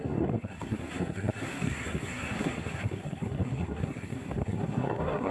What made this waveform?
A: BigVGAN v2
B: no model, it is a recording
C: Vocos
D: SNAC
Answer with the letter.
D